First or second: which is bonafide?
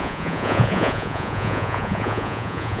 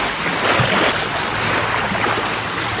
second